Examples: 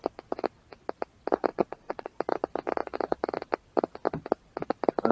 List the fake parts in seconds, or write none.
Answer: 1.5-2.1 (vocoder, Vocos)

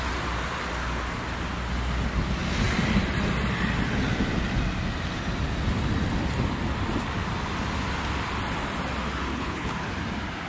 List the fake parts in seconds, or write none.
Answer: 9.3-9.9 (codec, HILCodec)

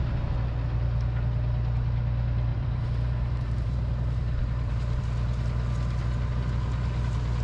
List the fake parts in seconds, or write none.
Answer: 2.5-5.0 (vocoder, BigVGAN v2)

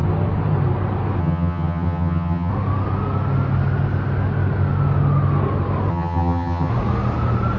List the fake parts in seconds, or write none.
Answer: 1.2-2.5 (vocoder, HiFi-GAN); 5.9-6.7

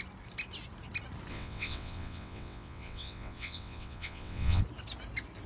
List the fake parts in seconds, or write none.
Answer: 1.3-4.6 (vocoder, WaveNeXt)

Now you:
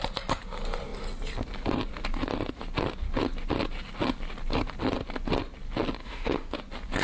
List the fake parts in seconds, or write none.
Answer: 6.0-6.6 (autoencoder, DAC-VAE)

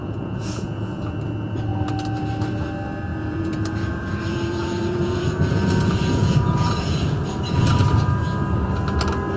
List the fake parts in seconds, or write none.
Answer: 0.0-1.0 (vocoder, Vocos); 3.1-7.3

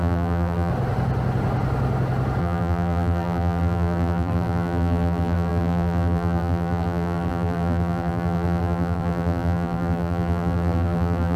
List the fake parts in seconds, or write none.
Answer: 0.0-0.7 (vocoder, BigVGAN v2); 2.4-11.4